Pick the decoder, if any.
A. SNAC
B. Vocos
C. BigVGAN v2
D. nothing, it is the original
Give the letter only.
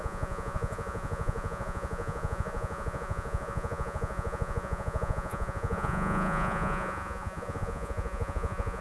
B